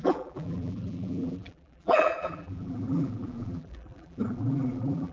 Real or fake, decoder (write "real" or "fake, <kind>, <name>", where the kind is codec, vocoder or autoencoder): fake, vocoder, BigVGAN v2